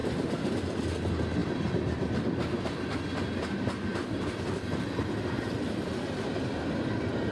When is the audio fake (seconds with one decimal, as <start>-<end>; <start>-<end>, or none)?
0.0-0.7; 1.4-2.1; 3.9-6.8